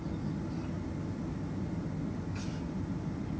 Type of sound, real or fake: real